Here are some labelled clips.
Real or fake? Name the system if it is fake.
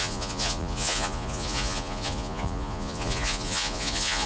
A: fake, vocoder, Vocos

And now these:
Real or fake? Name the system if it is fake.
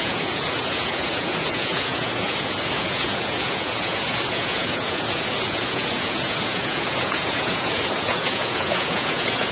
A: fake, vocoder, Vocos